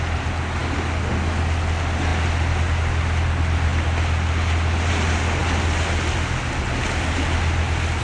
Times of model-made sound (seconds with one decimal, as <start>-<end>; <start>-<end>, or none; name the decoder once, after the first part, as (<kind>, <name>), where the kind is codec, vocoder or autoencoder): none